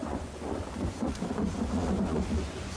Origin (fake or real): fake